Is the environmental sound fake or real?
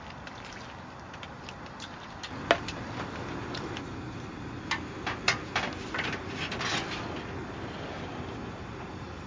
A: real